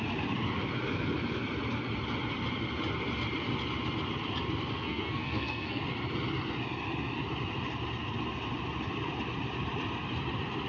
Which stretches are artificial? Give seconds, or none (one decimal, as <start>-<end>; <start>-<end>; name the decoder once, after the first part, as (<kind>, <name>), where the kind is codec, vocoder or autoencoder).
4.7-5.8 (codec, SNAC)